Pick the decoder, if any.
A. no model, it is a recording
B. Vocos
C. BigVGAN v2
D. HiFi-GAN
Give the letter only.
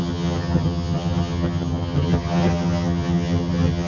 D